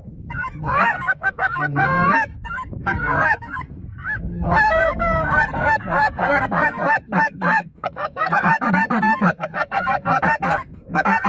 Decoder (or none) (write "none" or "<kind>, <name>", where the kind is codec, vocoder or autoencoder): codec, SNAC